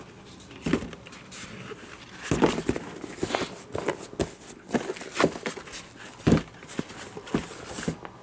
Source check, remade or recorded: recorded